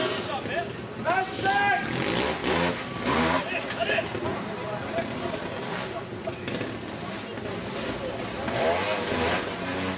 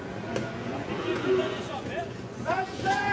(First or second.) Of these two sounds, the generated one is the second